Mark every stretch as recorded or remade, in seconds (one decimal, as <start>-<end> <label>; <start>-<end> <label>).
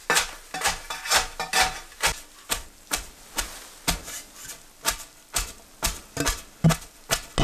0.0-7.4 recorded